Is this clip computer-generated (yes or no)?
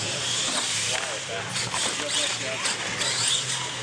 no